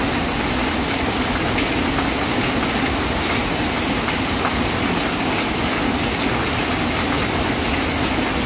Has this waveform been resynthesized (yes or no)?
no